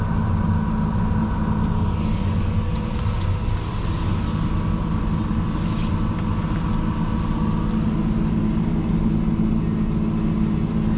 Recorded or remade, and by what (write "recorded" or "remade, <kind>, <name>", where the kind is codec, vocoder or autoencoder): recorded